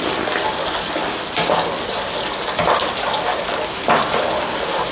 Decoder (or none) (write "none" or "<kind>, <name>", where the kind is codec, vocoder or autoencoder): none